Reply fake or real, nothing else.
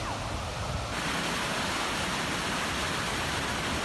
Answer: real